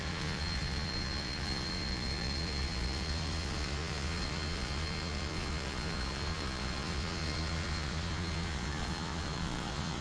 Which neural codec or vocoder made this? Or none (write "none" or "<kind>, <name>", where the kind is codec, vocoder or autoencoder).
vocoder, Vocos